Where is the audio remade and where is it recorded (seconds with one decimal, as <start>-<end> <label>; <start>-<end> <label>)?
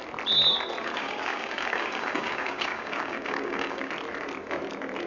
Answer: 0.0-0.8 recorded; 0.8-3.9 remade; 3.9-5.1 recorded